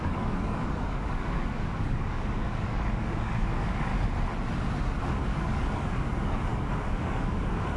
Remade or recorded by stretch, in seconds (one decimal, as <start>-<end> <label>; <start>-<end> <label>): 0.0-3.9 remade; 3.9-5.0 recorded; 5.0-7.8 remade